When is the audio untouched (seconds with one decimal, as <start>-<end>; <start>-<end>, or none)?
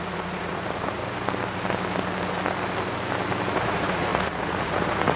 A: 1.0-3.5